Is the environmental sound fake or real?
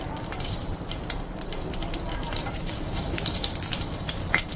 fake